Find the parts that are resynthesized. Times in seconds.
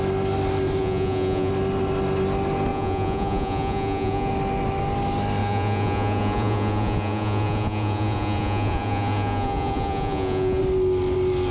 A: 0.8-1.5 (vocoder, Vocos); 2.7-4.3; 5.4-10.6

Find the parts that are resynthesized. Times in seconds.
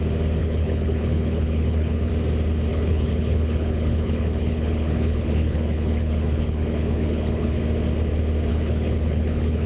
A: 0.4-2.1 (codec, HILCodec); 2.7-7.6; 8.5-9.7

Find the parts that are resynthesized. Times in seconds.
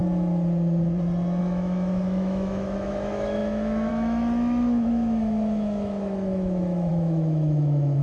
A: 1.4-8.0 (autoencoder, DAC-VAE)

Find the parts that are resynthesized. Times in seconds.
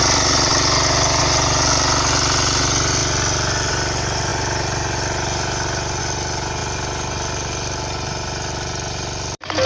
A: none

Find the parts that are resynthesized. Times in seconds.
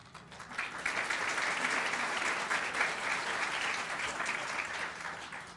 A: 1.1-5.6 (vocoder, BigVGAN v2)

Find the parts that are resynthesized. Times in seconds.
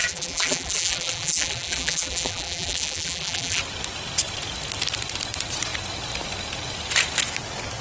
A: 0.0-3.6 (vocoder, BigVGAN v2)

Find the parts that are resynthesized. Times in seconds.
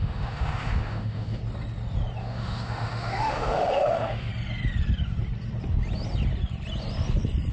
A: 0.0-1.4 (autoencoder, DAC-VAE); 2.2-4.3